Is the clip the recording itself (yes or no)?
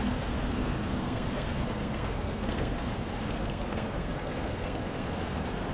no